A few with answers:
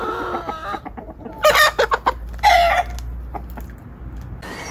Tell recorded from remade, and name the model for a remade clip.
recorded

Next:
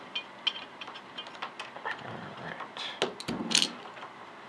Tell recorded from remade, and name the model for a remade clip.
recorded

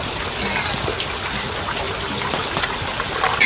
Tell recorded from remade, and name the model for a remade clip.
recorded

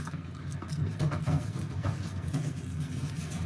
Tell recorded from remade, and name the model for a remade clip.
remade, codec, SNAC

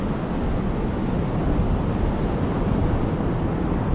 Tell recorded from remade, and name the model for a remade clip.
recorded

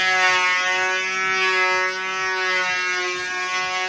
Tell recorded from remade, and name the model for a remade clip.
recorded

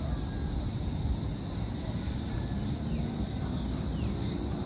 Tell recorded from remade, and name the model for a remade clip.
recorded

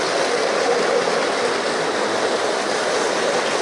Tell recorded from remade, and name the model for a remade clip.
recorded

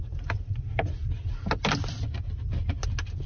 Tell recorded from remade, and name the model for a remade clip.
recorded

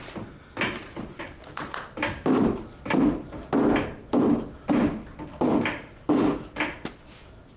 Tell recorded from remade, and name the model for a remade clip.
recorded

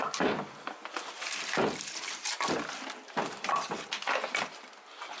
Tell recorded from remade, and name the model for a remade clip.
recorded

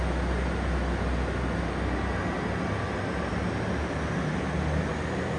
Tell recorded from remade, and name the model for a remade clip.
recorded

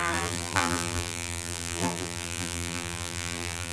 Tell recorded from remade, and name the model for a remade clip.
remade, vocoder, BigVGAN v2